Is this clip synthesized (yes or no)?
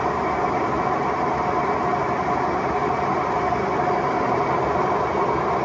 no